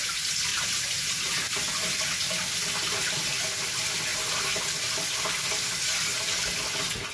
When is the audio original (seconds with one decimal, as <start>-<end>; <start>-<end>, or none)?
0.0-0.5; 1.6-7.1